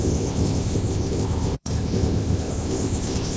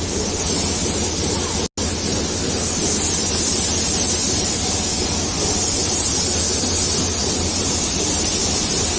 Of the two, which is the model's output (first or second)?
first